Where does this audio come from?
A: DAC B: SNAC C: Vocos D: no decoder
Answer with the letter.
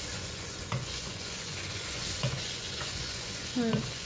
C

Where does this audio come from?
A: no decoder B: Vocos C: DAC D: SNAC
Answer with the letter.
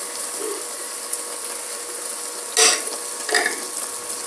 A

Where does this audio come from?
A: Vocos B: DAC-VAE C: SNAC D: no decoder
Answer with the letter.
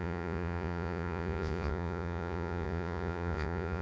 A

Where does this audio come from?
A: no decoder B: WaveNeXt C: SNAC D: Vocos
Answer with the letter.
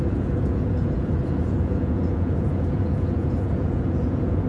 D